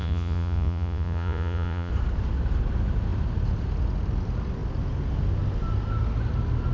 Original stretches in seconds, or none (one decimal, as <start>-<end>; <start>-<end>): 1.9-6.7